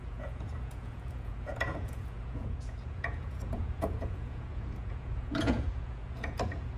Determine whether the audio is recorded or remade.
remade